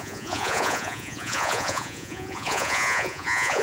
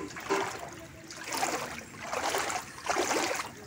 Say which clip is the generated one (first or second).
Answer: first